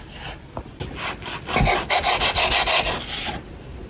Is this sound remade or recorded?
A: recorded